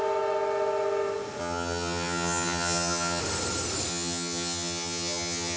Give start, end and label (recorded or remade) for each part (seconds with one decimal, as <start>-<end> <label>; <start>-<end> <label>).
0.0-1.4 recorded; 1.4-3.2 remade; 3.2-3.9 recorded; 3.9-5.6 remade